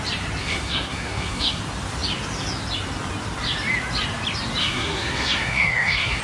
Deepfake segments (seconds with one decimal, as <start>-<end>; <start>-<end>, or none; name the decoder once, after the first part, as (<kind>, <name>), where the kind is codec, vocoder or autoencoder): 0.4-1.6 (codec, SNAC); 4.6-6.2